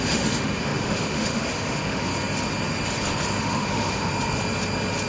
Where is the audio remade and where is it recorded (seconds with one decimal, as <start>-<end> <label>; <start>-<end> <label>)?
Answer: 0.0-2.1 remade; 2.1-3.4 recorded; 3.4-4.1 remade; 4.1-5.1 recorded